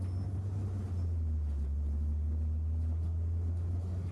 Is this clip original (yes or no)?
yes